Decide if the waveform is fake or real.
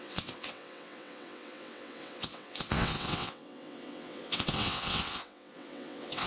fake